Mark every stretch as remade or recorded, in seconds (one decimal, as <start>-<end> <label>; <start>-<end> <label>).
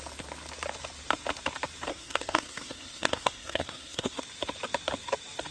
0.0-1.9 recorded; 1.9-4.2 remade; 4.2-5.5 recorded